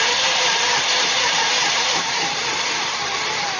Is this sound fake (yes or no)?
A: yes